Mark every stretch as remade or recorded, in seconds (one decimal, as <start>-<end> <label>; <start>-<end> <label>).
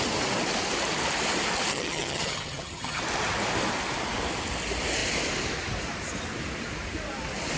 0.0-1.7 recorded; 1.7-3.0 remade; 3.0-7.6 recorded